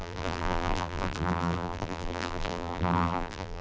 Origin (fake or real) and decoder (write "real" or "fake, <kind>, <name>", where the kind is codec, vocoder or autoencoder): fake, vocoder, BigVGAN v2